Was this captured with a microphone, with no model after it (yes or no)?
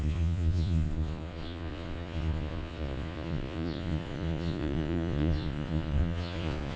no